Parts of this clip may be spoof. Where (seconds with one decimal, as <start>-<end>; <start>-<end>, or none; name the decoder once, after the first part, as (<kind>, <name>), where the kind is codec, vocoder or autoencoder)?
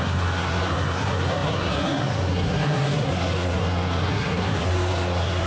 0.0-5.5 (codec, SNAC)